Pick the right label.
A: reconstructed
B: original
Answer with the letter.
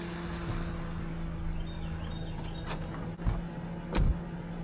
B